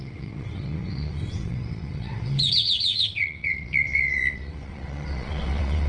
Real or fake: fake